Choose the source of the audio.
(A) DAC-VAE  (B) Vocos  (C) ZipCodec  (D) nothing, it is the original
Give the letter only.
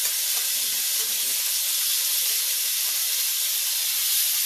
D